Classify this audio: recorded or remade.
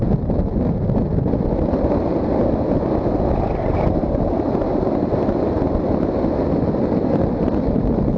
recorded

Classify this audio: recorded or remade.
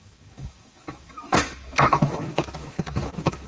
remade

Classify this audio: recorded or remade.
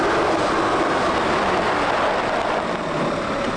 recorded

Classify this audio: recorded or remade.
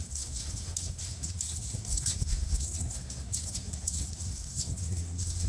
remade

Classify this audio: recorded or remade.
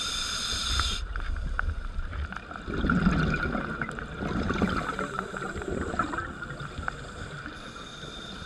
recorded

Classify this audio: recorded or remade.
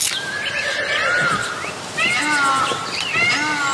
recorded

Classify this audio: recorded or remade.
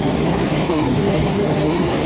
remade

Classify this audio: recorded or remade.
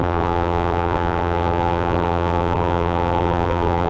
remade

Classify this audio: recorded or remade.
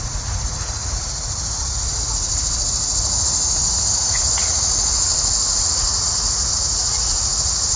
remade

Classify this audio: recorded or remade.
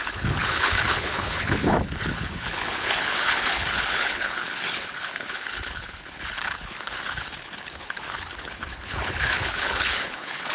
remade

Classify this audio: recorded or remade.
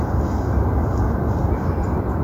recorded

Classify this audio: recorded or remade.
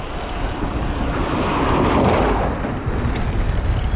recorded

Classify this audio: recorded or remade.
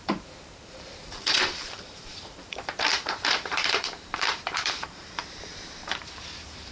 remade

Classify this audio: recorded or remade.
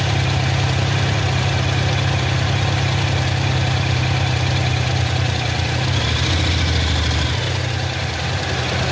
recorded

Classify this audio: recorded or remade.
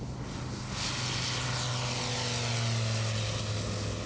recorded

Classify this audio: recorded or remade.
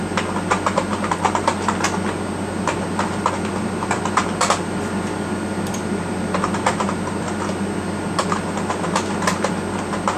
recorded